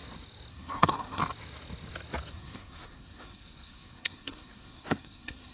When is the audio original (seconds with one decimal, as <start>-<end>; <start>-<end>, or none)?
0.0-0.5; 1.2-2.3